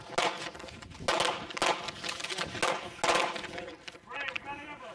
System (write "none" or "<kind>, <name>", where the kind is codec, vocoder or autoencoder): none